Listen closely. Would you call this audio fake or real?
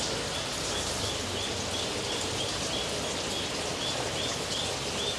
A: real